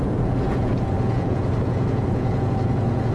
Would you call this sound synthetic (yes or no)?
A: yes